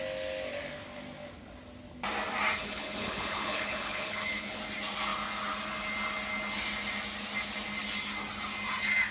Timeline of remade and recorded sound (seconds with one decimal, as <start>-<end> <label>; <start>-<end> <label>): 0.0-2.6 recorded; 2.6-4.6 remade; 4.6-9.1 recorded